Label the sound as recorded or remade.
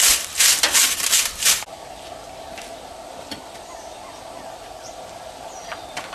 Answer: remade